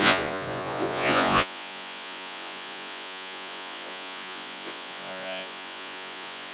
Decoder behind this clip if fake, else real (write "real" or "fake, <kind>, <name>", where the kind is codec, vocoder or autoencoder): fake, vocoder, Vocos